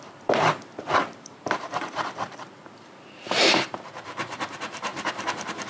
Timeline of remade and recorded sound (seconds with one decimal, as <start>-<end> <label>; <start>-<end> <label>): 0.0-1.0 recorded; 1.0-4.4 remade; 4.4-4.9 recorded; 4.9-5.7 remade

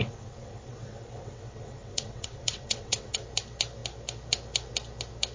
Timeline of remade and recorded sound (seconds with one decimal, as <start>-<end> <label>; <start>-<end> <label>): 0.0-3.2 remade; 3.2-5.3 recorded

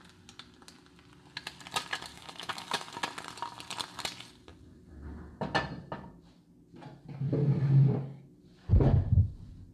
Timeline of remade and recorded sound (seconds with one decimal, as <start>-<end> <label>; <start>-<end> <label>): 0.0-2.1 recorded; 2.1-2.9 remade; 2.9-9.7 recorded

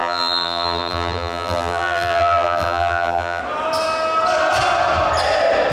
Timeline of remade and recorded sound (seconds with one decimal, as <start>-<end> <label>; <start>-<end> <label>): 0.0-3.4 remade; 3.4-5.7 recorded